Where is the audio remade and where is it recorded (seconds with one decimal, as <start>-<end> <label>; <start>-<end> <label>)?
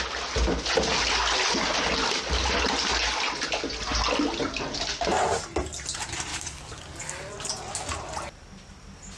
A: 0.0-6.3 recorded; 6.3-7.0 remade; 7.0-9.2 recorded